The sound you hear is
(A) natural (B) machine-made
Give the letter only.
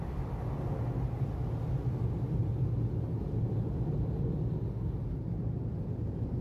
A